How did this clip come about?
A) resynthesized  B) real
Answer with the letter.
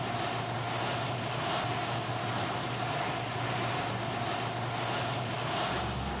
B